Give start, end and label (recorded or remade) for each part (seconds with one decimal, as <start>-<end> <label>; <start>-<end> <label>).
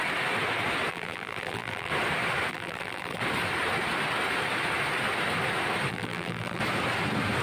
0.0-0.9 recorded; 0.9-1.9 remade; 1.9-2.5 recorded; 2.5-3.2 remade; 3.2-5.9 recorded; 5.9-6.6 remade; 6.6-7.4 recorded